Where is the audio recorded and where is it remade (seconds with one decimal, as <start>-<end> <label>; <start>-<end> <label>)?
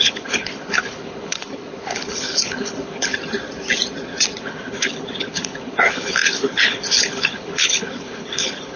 0.0-3.1 remade; 3.1-4.4 recorded; 4.4-8.8 remade